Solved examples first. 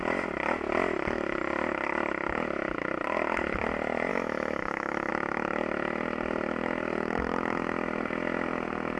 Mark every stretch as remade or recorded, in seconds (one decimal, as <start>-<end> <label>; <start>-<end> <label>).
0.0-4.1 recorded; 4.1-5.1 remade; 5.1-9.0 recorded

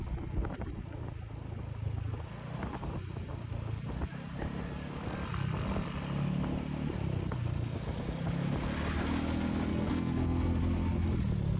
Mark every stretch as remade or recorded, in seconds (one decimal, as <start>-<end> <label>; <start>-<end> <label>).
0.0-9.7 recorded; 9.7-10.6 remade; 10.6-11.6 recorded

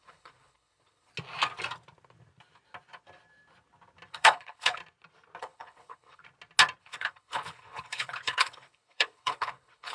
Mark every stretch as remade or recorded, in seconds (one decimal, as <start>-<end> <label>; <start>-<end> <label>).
0.0-1.1 remade; 1.1-4.1 recorded; 4.1-4.8 remade; 4.8-5.4 recorded; 5.4-6.2 remade; 6.2-6.8 recorded; 6.8-9.9 remade

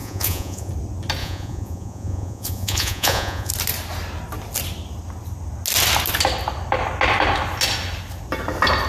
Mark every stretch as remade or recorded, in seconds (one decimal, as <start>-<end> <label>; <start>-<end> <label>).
0.0-0.7 remade; 0.7-1.2 recorded; 1.2-3.5 remade; 3.5-8.9 recorded

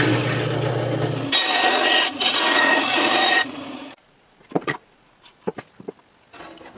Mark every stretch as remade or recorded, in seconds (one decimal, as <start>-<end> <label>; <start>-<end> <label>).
0.0-1.5 recorded; 1.5-5.4 remade; 5.4-6.8 recorded